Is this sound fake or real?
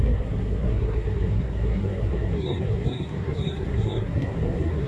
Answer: fake